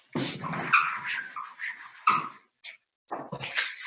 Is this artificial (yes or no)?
no